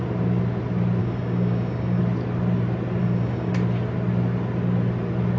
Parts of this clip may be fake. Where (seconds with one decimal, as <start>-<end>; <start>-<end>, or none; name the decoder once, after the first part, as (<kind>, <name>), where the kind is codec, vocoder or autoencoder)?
1.0-2.0 (codec, DAC); 3.0-3.5